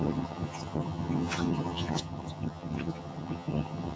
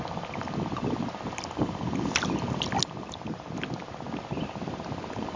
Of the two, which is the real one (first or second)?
second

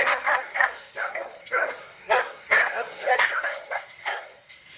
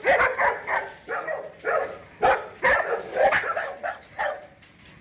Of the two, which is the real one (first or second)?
second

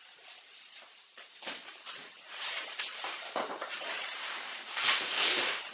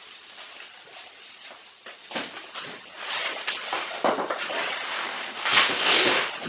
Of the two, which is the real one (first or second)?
second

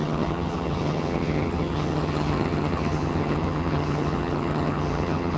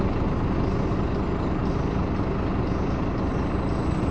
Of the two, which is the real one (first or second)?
second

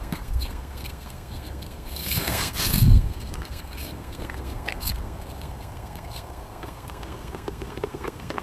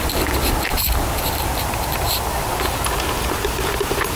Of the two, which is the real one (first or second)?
second